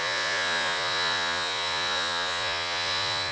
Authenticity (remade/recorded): remade